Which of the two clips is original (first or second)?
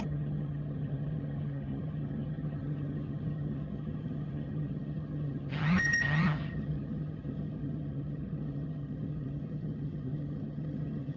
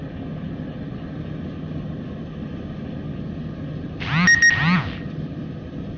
second